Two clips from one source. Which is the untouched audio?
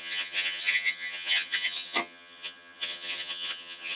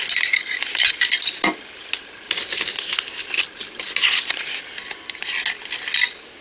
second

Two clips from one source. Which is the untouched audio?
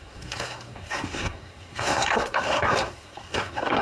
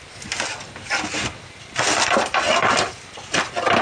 second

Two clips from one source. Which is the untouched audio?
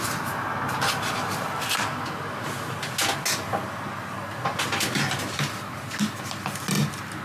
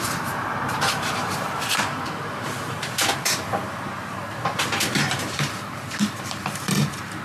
first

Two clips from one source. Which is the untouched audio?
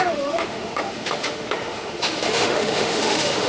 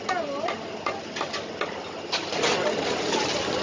second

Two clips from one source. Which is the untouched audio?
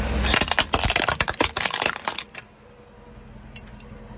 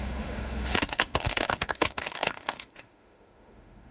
first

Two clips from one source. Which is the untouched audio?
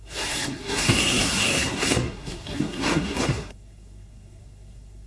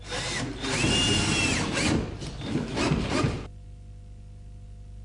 second